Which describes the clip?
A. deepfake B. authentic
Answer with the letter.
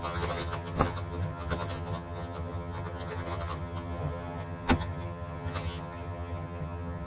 A